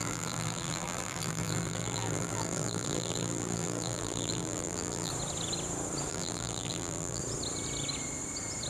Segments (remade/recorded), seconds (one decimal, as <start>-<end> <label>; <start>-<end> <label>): 0.0-5.1 remade; 5.1-6.1 recorded; 6.1-7.2 remade; 7.2-8.7 recorded